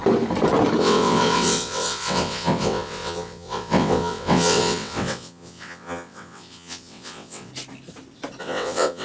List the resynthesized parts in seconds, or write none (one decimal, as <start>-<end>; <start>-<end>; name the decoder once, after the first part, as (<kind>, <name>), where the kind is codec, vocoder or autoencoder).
0.8-7.5 (vocoder, WaveNeXt); 8.4-9.0